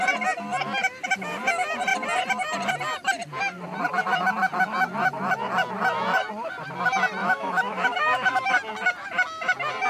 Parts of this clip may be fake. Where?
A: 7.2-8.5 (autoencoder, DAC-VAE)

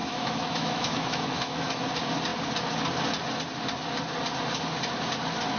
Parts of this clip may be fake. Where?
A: 0.0-1.8 (autoencoder, DAC-VAE)

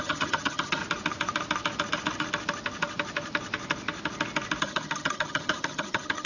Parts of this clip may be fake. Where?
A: 0.0-0.8 (vocoder, HiFi-GAN); 4.6-6.3

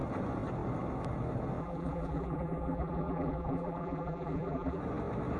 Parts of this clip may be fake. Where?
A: 1.6-4.8 (vocoder, BigVGAN v2)

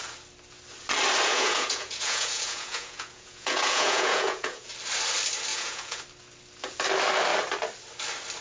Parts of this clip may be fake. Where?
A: 1.3-4.7 (vocoder, Vocos); 5.5-6.0